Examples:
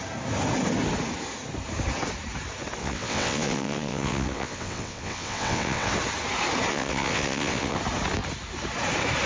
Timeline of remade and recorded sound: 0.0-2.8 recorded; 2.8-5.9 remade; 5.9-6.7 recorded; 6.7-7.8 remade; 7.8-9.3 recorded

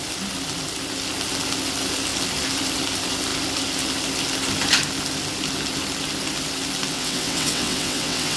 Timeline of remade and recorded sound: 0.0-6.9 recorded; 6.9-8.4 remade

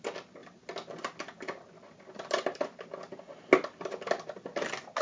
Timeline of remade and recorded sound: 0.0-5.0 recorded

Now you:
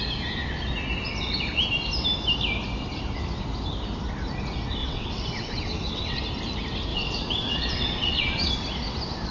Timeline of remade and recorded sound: 0.0-4.8 recorded; 4.8-6.2 remade; 6.2-6.9 recorded; 6.9-8.5 remade; 8.5-9.3 recorded

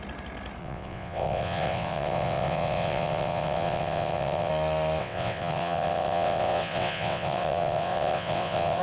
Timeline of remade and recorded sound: 0.0-0.6 recorded; 0.6-4.5 remade; 4.5-5.0 recorded; 5.0-8.8 remade

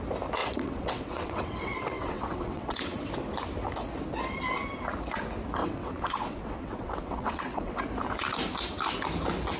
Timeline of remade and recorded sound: 0.0-0.4 recorded; 0.4-3.1 remade; 3.1-5.6 recorded; 5.6-7.8 remade; 7.8-9.6 recorded